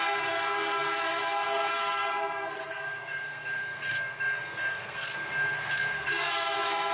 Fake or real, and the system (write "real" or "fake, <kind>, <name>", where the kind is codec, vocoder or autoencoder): fake, codec, SNAC